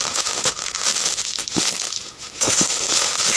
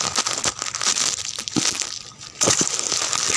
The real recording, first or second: second